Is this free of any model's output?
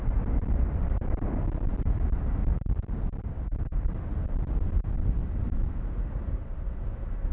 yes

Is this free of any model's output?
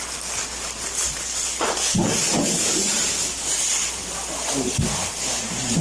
yes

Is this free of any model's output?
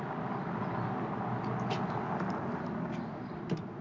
yes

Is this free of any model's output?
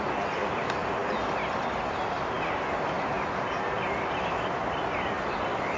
yes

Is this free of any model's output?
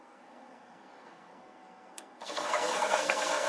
no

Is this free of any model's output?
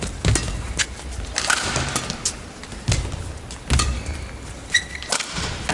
yes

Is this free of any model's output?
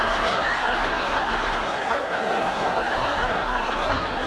no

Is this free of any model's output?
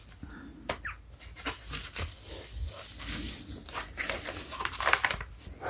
yes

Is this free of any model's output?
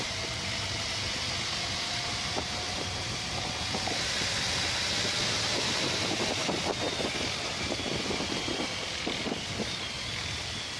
yes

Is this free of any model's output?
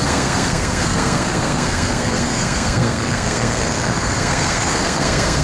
no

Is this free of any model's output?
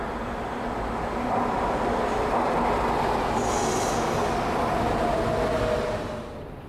yes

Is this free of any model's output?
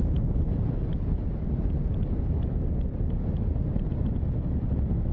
yes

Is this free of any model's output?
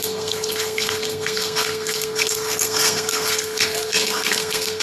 no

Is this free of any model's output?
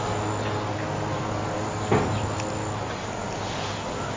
yes